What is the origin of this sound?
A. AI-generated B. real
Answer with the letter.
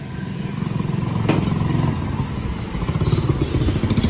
B